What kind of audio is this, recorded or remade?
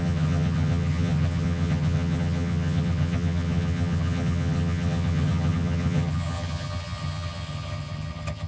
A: remade